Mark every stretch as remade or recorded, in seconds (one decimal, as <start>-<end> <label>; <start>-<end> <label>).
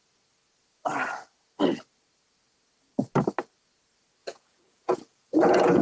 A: 0.0-4.2 recorded; 4.2-5.8 remade